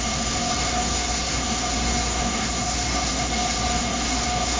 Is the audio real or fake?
fake